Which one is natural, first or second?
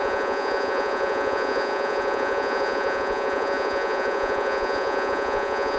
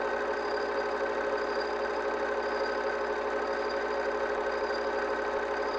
second